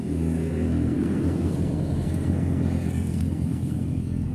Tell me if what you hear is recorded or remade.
remade